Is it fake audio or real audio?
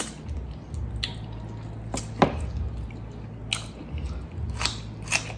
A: real